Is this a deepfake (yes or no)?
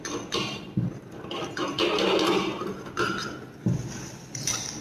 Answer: no